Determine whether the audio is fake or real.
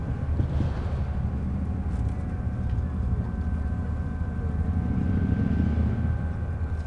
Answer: real